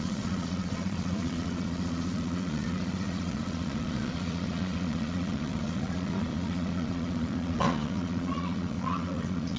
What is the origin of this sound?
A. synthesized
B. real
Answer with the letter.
A